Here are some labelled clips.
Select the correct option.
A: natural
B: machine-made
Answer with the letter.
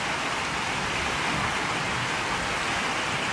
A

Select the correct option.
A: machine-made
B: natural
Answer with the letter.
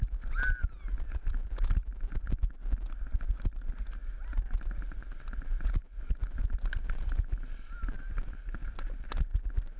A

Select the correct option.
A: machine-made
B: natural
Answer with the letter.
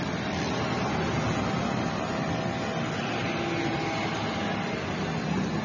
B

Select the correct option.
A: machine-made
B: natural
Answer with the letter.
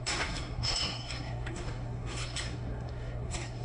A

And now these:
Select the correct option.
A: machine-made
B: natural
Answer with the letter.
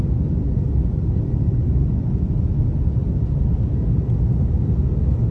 B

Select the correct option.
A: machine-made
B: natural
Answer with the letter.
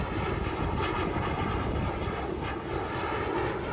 B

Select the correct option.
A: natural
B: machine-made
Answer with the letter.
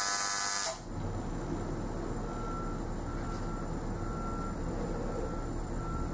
A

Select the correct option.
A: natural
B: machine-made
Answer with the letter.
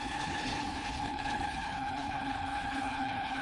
B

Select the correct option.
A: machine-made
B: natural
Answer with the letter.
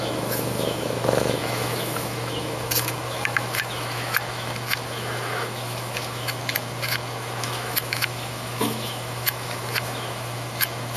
A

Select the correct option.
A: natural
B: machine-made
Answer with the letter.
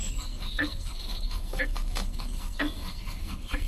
B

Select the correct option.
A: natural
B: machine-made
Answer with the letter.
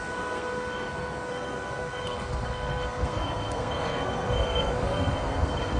B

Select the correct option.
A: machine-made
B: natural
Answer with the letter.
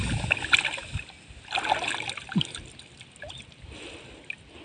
B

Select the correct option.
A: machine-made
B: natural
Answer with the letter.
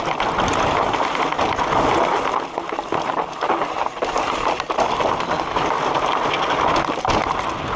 B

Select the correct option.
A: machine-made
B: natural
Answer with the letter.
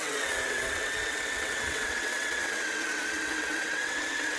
A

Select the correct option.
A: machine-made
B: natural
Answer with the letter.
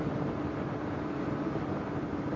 B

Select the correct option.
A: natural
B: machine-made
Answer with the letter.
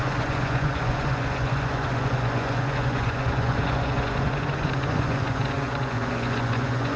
B